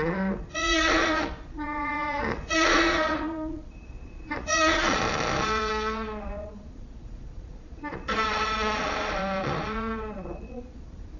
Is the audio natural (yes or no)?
no